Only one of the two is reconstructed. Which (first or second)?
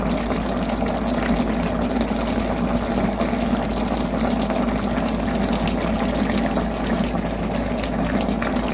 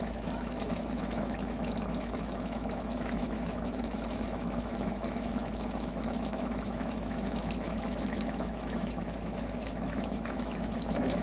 second